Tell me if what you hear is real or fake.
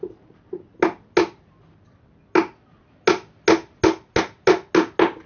real